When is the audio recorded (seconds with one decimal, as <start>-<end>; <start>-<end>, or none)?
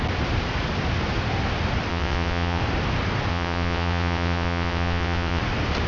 0.0-1.9; 2.6-3.3; 5.4-5.9